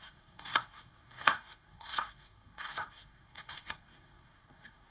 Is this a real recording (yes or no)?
no